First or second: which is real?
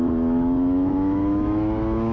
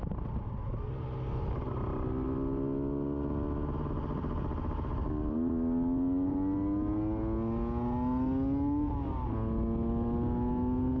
second